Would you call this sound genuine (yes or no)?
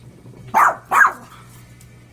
yes